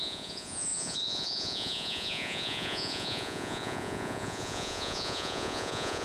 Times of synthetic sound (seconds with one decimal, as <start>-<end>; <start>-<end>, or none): 0.0-6.0